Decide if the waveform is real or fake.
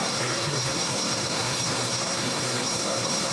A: fake